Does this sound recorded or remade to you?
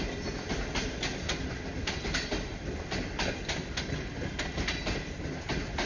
recorded